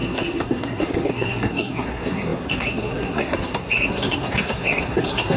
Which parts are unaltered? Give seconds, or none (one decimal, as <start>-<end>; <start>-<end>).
none